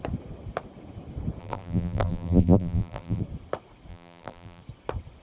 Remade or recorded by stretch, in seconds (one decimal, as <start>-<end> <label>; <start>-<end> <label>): 0.0-1.4 recorded; 1.4-3.2 remade; 3.2-3.9 recorded; 3.9-4.6 remade; 4.6-5.2 recorded